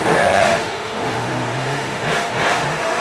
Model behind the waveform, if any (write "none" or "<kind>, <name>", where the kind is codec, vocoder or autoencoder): autoencoder, DAC-VAE